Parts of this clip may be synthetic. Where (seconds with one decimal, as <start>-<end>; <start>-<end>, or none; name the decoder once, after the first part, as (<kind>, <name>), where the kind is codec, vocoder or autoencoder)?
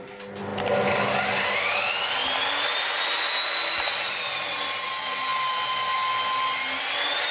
none